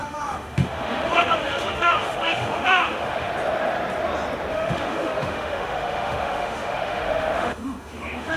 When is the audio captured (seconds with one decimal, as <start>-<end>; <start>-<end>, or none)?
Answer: 3.3-4.5